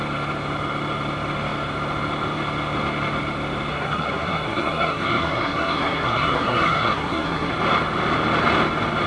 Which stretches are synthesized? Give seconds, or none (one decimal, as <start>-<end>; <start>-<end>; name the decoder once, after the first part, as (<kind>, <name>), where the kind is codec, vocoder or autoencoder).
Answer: 3.7-7.5 (codec, SNAC)

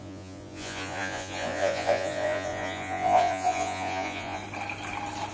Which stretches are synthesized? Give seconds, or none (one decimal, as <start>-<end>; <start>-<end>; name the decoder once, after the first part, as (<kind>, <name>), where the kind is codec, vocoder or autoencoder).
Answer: 0.0-4.4 (vocoder, Vocos)